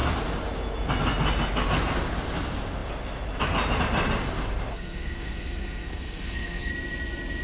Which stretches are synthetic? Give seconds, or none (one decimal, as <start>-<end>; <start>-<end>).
4.7-6.7